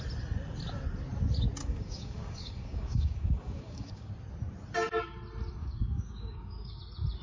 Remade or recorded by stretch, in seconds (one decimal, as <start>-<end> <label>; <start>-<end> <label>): 0.0-1.6 recorded; 1.6-4.1 remade; 4.1-5.6 recorded; 5.6-6.8 remade; 6.8-7.2 recorded